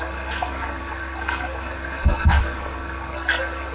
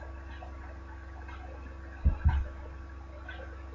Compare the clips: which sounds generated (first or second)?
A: first